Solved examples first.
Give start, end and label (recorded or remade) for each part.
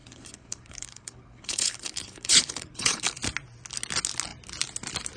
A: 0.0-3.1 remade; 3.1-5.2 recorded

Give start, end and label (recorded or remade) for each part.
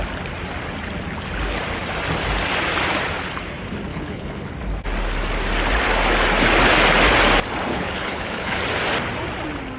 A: 0.0-3.9 recorded; 3.9-4.5 remade; 4.5-7.7 recorded; 7.7-8.6 remade; 8.6-9.8 recorded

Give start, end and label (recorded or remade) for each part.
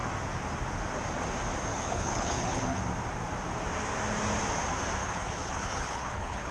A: 0.0-1.7 recorded; 1.7-2.8 remade; 2.8-5.0 recorded; 5.0-6.5 remade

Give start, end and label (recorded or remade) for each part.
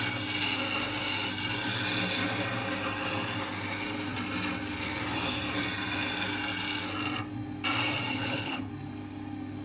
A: 0.0-8.1 recorded; 8.1-8.7 remade; 8.7-9.6 recorded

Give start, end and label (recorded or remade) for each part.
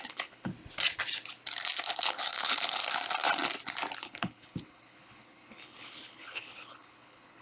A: 0.0-0.5 remade; 0.5-2.0 recorded; 2.0-2.8 remade; 2.8-4.0 recorded; 4.0-7.4 remade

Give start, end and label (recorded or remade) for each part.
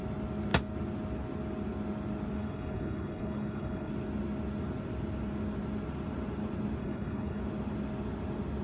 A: 0.0-2.4 recorded; 2.4-3.9 remade; 3.9-6.8 recorded; 6.8-7.4 remade; 7.4-8.6 recorded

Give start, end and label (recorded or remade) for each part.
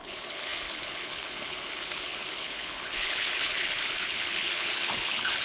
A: 0.0-5.4 remade